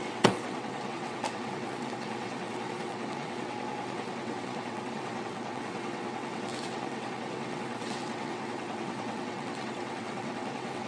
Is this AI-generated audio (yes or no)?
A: yes